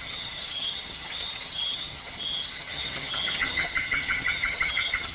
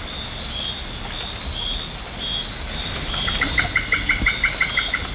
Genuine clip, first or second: second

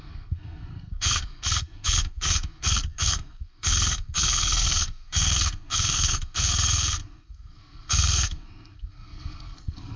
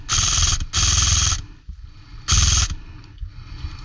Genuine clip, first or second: second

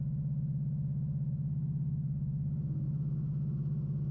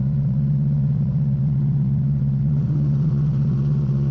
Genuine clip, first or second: first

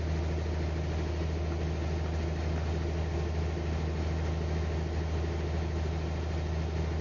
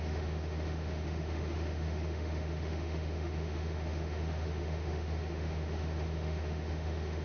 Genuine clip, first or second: first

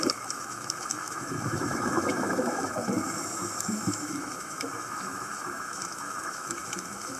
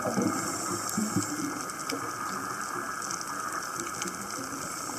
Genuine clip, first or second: second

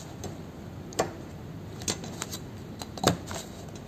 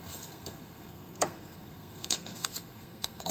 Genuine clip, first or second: first